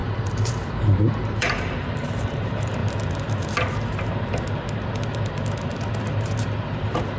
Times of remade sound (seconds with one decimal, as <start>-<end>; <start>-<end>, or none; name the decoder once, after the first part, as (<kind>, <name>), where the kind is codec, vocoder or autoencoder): 0.0-2.8 (vocoder, BigVGAN v2); 6.6-7.2